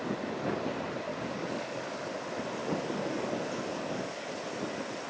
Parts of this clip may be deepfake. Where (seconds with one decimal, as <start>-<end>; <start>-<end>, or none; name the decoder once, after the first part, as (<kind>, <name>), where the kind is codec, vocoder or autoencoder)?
1.1-1.8 (codec, DAC); 2.6-4.3